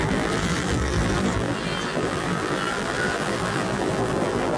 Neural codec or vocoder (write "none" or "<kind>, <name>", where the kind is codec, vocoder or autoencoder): vocoder, BigVGAN v2